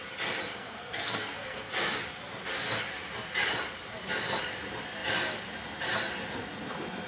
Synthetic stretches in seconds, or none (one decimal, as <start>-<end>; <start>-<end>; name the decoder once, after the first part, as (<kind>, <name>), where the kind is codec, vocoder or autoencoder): 0.5-1.7 (codec, SNAC)